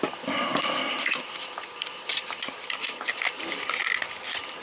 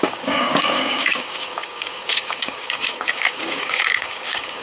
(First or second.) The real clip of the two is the first